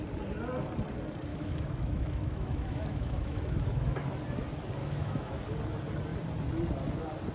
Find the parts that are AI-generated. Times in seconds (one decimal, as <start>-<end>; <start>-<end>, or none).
1.3-4.1; 4.8-5.3